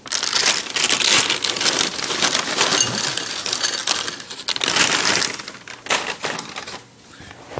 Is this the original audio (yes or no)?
yes